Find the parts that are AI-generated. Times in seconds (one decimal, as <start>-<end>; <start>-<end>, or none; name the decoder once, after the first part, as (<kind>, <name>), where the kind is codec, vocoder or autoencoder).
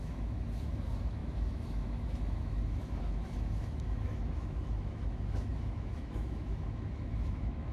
0.0-7.7 (autoencoder, DAC-VAE)